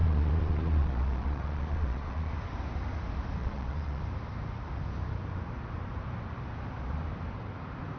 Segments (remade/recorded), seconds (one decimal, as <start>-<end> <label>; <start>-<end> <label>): 0.0-2.3 remade; 2.3-3.4 recorded; 3.4-4.0 remade; 4.0-8.0 recorded